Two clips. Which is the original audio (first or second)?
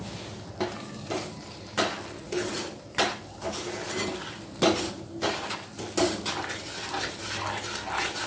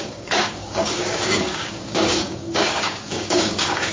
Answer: first